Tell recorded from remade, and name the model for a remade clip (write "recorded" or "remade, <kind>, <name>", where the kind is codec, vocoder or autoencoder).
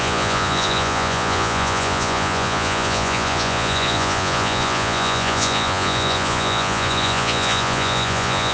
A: remade, vocoder, Vocos